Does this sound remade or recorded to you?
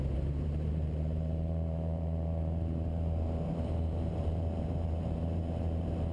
remade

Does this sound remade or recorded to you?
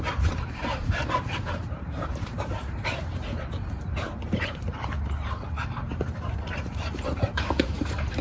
remade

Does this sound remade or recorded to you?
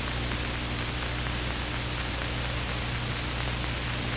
recorded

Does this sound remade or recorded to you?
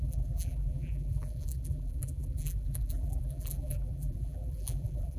remade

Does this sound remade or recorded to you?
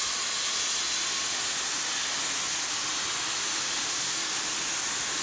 recorded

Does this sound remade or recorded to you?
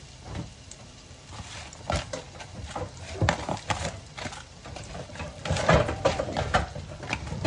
remade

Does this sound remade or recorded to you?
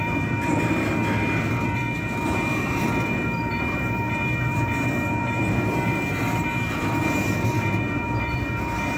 remade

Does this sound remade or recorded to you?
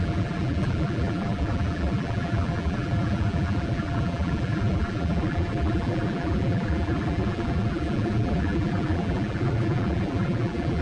remade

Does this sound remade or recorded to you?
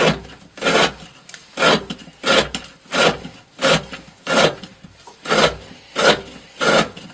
recorded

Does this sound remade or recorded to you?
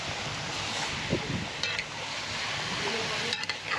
recorded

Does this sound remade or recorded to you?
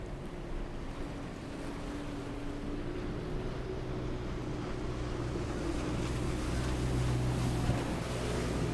recorded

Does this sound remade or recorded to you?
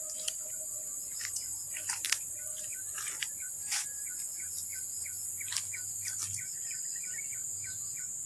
recorded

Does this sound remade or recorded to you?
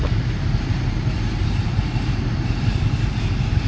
remade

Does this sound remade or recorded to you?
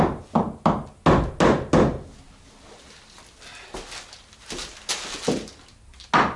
recorded